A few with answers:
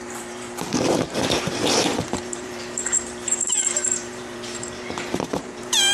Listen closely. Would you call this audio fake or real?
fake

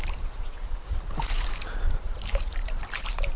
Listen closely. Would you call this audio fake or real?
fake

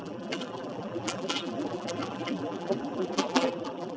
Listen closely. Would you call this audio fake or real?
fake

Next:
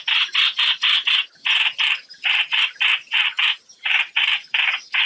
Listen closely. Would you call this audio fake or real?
fake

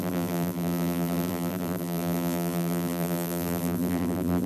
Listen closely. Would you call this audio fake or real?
fake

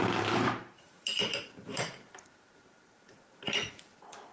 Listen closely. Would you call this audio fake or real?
fake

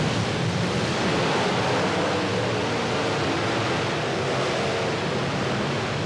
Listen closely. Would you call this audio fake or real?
real